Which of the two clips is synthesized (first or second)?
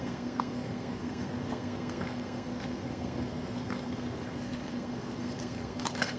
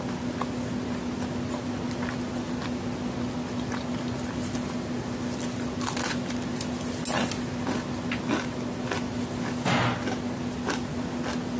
first